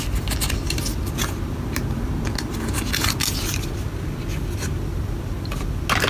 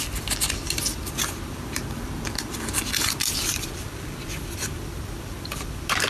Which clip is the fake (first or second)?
second